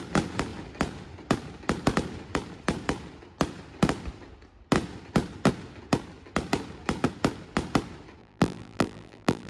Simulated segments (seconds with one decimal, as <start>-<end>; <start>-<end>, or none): 8.2-9.5